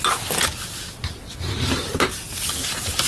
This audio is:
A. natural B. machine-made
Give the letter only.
A